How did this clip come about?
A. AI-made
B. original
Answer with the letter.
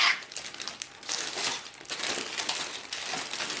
B